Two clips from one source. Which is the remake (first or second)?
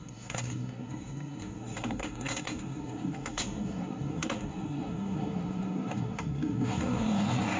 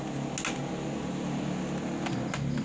first